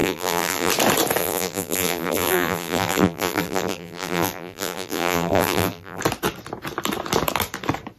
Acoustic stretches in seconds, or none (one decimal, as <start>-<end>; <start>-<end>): 0.7-1.2; 6.0-8.0